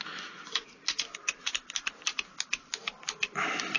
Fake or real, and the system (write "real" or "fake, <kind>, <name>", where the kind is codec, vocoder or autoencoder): real